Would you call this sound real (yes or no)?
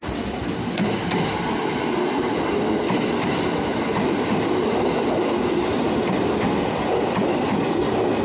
yes